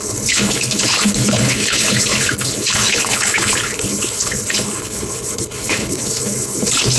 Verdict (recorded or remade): remade